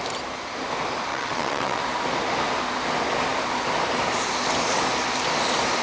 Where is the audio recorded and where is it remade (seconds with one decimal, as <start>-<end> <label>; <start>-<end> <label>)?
0.0-1.1 recorded; 1.1-1.8 remade; 1.8-5.8 recorded